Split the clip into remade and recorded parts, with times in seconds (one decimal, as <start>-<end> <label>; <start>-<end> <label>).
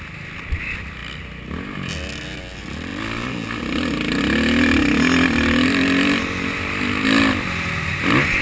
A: 0.0-8.4 recorded